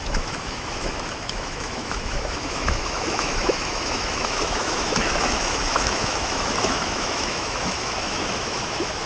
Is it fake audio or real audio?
fake